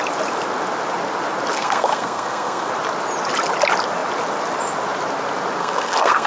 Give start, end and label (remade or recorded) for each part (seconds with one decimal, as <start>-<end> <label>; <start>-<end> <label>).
0.0-1.5 recorded; 1.5-2.7 remade; 2.7-5.6 recorded; 5.6-6.3 remade